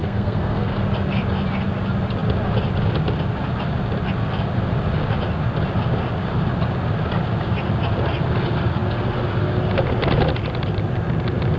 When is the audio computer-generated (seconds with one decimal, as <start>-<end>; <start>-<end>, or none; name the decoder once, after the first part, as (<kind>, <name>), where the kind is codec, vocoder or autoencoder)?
0.0-0.8 (codec, SNAC)